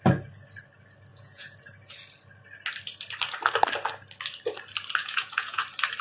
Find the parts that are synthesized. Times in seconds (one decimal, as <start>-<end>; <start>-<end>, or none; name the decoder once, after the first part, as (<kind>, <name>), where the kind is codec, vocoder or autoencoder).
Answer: 1.1-1.6 (vocoder, Vocos); 5.0-5.6